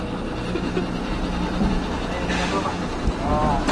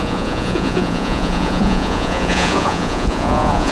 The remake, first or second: second